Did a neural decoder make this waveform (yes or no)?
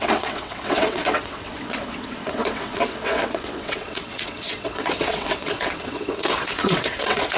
yes